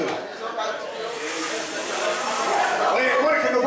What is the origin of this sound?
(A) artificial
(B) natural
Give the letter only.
B